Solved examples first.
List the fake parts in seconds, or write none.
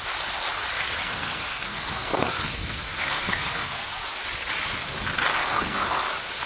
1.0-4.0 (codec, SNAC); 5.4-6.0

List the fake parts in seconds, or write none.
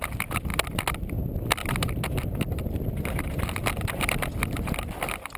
1.6-2.6 (vocoder, BigVGAN v2); 3.6-4.3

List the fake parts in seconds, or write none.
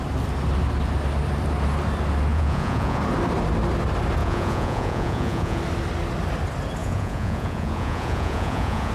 2.3-3.0 (vocoder, Vocos); 4.2-5.6; 6.8-8.9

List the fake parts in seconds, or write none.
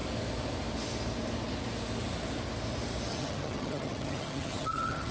3.1-5.1 (vocoder, HiFi-GAN)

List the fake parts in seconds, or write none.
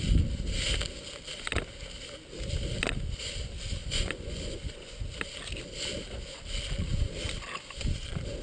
3.8-5.0 (vocoder, Vocos)